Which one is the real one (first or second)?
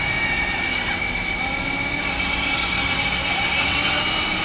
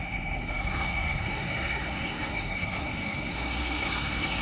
first